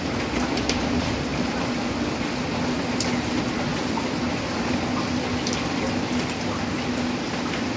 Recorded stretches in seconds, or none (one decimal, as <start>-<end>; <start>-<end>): 0.0-7.8